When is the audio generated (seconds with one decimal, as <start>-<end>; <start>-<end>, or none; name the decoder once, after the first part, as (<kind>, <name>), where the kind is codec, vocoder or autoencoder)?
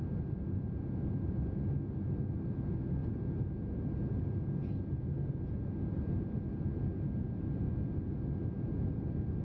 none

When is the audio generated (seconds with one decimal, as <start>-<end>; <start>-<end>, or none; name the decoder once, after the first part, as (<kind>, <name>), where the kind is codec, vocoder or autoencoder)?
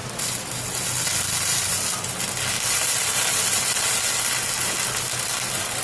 none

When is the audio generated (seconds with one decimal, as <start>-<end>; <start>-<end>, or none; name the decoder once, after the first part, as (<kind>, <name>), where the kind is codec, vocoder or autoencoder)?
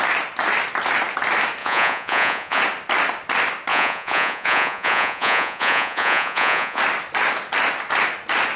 1.6-2.6 (vocoder, Vocos); 3.7-6.8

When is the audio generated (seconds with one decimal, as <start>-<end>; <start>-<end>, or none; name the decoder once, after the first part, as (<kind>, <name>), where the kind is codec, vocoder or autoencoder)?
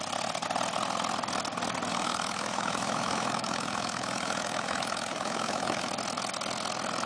1.9-5.9 (autoencoder, DAC-VAE)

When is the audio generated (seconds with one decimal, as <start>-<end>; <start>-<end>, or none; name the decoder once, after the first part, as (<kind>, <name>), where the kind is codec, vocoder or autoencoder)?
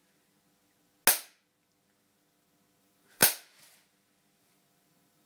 2.8-3.2 (vocoder, BigVGAN v2); 4.4-5.3